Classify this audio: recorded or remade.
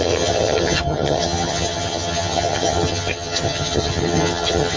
remade